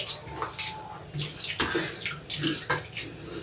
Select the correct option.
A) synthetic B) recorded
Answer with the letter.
B